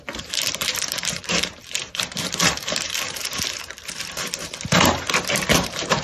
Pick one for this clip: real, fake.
fake